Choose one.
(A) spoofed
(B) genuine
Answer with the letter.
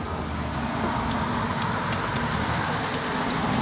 B